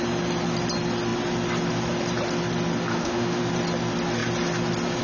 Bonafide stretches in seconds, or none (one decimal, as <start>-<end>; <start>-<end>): 0.0-2.9; 3.4-5.0